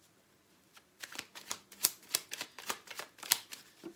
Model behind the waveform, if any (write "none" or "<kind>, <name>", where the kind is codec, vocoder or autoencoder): vocoder, BigVGAN v2